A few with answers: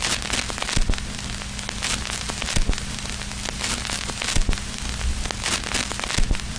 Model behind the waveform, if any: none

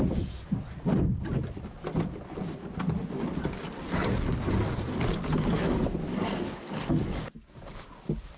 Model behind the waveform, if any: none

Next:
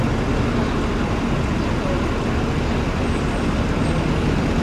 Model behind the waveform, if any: none